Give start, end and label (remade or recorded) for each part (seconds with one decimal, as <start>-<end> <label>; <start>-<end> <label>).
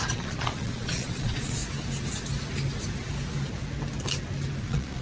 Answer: 0.0-1.6 remade; 1.6-4.6 recorded; 4.6-5.0 remade